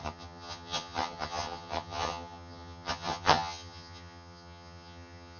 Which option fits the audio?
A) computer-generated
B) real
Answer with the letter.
A